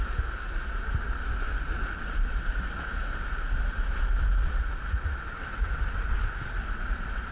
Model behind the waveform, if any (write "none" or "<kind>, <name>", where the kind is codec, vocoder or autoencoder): none